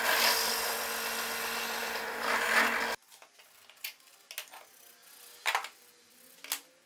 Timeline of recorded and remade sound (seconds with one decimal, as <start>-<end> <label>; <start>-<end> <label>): 0.0-1.8 recorded; 1.8-2.5 remade; 2.5-6.9 recorded